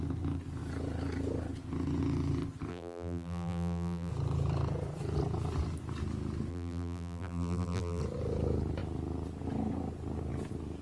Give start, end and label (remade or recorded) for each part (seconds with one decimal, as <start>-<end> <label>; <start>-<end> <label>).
0.0-2.7 recorded; 2.7-4.1 remade; 4.1-6.5 recorded; 6.5-8.0 remade; 8.0-10.8 recorded